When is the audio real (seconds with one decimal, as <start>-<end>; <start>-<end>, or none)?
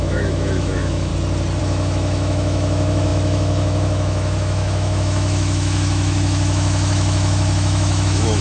1.1-1.6